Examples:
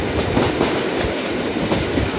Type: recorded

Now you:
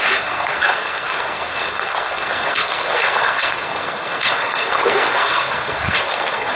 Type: remade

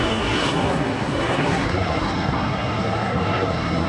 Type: remade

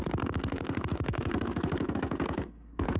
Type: remade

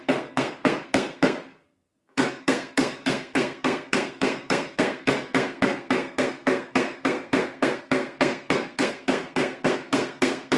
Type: remade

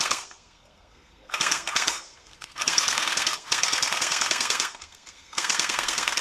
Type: remade